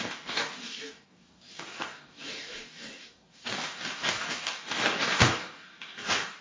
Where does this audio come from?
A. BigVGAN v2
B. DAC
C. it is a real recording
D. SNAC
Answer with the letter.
B